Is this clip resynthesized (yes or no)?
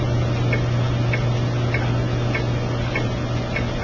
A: no